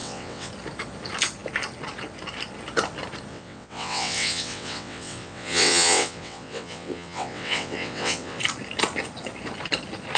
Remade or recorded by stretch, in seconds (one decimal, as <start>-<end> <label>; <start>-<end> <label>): 0.0-0.5 remade; 0.5-3.3 recorded; 3.3-8.4 remade; 8.4-10.2 recorded